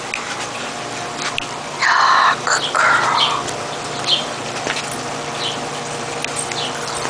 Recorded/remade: recorded